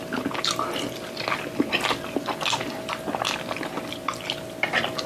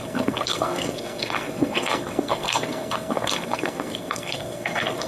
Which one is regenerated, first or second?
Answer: second